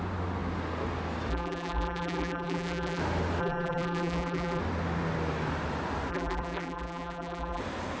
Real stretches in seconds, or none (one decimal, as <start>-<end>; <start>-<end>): 0.0-1.3; 3.0-3.4; 4.6-6.1; 7.6-8.0